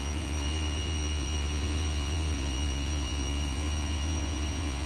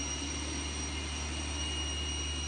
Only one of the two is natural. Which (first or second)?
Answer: second